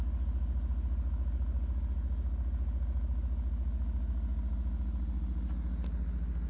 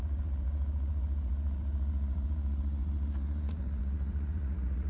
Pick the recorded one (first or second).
first